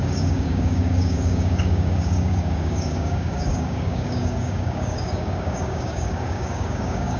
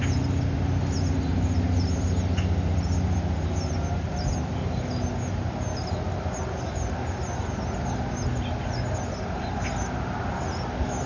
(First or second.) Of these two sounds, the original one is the second